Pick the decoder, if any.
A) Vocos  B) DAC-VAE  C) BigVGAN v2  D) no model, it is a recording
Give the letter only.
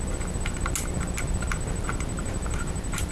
D